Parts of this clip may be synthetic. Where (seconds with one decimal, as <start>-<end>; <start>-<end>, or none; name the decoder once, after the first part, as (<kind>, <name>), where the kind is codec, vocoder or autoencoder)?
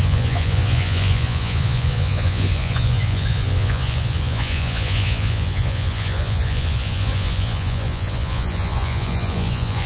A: 0.0-9.9 (vocoder, Vocos)